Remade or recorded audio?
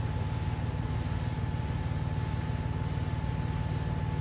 recorded